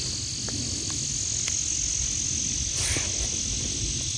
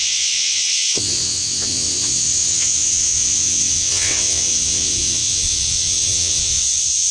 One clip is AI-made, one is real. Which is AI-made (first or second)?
second